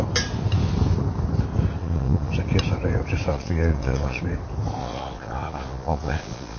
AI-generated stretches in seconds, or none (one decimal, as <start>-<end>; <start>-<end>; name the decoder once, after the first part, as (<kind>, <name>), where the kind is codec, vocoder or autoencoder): 1.8-2.3 (vocoder, Vocos); 3.3-4.2; 4.8-6.6